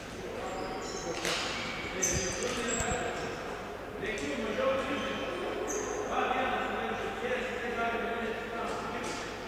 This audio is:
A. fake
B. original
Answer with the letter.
B